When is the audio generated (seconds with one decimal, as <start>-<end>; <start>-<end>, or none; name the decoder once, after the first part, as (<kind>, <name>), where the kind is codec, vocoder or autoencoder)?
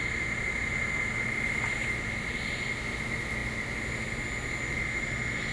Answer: none